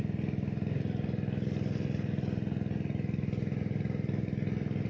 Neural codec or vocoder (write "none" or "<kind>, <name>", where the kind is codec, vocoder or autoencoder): none